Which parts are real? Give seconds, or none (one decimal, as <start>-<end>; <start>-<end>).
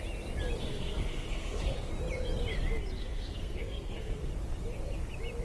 0.0-0.6; 1.9-3.0; 4.3-5.4